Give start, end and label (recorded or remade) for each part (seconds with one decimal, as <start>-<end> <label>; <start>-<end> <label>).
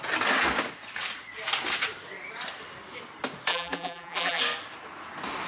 0.0-3.5 recorded; 3.5-4.4 remade; 4.4-5.5 recorded